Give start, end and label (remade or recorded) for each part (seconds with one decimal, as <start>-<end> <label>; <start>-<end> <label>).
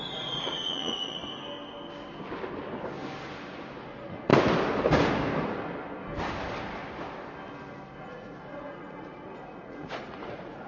0.0-1.2 remade; 1.2-3.8 recorded; 3.8-4.3 remade; 4.3-8.0 recorded; 8.0-10.7 remade